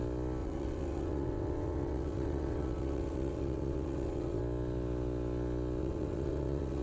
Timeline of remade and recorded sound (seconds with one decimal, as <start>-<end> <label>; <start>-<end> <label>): 0.0-0.4 recorded; 0.4-4.4 remade; 4.4-5.8 recorded; 5.8-6.8 remade